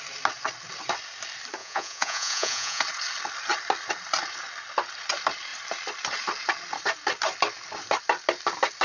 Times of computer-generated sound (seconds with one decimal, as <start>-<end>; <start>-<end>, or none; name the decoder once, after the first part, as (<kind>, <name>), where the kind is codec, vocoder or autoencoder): 1.6-2.8 (vocoder, Vocos)